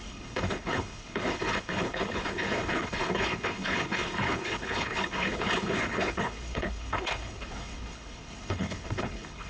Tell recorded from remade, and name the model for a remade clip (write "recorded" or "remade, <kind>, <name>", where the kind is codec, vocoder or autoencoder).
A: remade, codec, HILCodec